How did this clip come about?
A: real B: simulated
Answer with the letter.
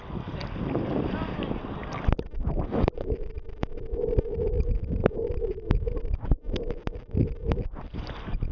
A